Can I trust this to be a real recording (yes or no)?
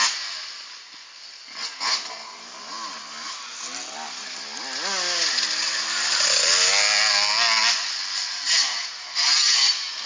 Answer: yes